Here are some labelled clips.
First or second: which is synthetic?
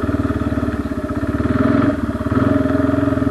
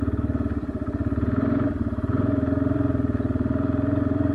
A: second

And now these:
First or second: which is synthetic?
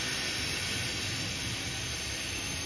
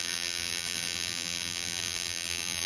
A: second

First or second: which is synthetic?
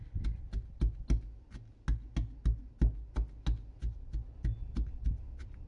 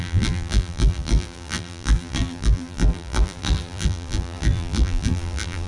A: second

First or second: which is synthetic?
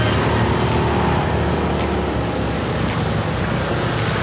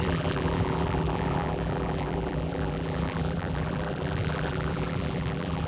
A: second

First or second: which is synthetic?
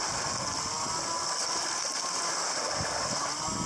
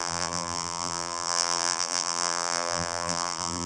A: second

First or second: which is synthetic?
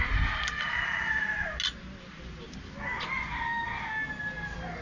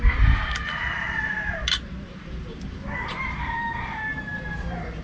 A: second